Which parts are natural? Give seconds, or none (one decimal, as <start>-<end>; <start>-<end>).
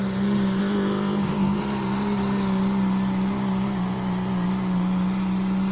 0.0-0.6; 1.6-5.7